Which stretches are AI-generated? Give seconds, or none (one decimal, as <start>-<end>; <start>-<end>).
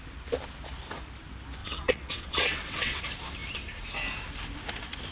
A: 1.6-3.0